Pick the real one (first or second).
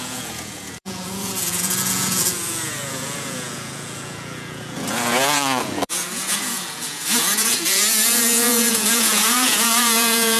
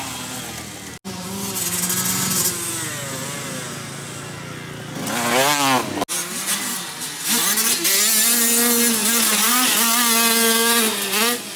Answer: second